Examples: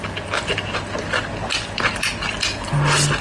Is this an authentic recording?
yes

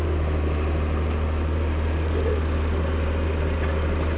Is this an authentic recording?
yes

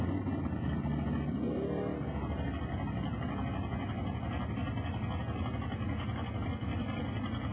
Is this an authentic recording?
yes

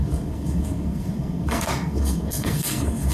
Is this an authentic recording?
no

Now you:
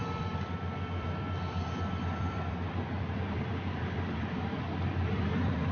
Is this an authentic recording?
no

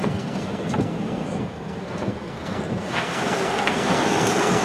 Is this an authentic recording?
no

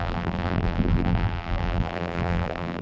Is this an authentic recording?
no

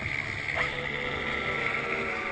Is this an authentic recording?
yes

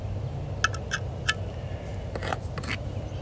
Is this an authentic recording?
yes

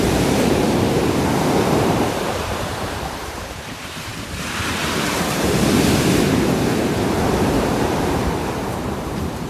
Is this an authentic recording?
no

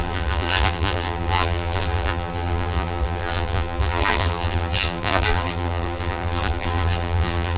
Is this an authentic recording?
no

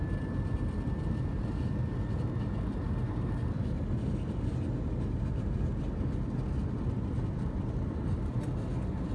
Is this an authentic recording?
yes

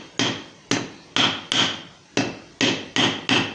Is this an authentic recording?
yes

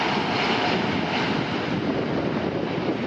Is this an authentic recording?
yes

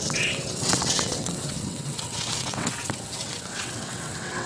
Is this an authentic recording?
no